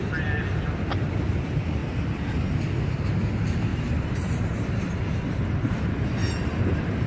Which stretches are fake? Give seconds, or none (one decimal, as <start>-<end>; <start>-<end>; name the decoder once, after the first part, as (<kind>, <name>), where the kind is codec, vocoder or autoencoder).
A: 3.7-5.0 (vocoder, BigVGAN v2); 6.2-7.1

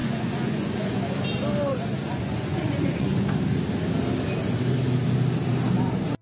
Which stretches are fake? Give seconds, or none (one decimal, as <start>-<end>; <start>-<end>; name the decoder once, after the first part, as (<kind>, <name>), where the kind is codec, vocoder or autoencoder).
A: 0.0-1.0 (vocoder, Vocos); 1.7-3.1

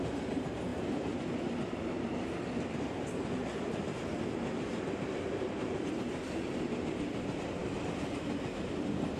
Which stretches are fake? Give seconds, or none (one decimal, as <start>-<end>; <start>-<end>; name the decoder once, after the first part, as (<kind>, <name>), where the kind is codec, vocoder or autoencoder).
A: none

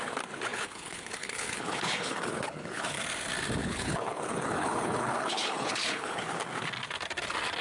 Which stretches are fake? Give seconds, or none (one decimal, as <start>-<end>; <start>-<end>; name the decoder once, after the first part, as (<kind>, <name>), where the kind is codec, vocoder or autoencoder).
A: 0.5-3.0 (codec, HILCodec); 3.6-6.4

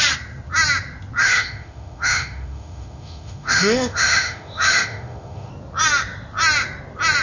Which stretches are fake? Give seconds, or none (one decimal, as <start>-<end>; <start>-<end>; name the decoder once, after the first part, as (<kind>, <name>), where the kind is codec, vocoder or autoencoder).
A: 1.2-5.5 (autoencoder, DAC-VAE)

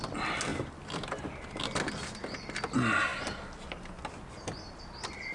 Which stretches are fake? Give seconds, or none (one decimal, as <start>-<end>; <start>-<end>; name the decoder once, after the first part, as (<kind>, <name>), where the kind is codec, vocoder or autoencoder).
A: none

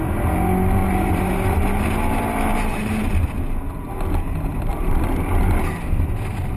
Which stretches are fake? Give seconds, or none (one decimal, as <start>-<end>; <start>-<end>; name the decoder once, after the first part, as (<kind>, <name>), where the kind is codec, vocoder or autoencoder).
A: 0.8-3.1 (vocoder, BigVGAN v2); 4.7-5.6

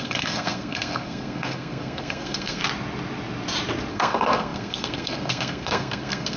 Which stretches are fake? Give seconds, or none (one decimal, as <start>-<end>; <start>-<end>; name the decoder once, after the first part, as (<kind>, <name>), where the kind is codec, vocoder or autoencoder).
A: 0.0-2.6 (codec, SNAC); 3.9-6.4